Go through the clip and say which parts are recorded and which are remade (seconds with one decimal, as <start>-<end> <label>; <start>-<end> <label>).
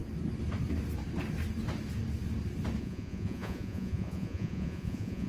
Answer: 0.0-2.8 recorded; 2.8-5.3 remade